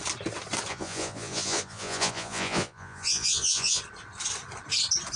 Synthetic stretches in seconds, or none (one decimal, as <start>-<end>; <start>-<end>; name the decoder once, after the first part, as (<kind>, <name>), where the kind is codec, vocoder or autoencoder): 0.7-3.8 (vocoder, Vocos)